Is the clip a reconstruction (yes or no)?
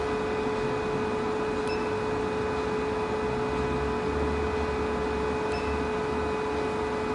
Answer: no